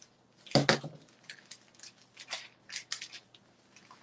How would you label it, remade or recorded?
recorded